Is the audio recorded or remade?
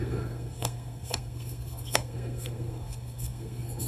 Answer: remade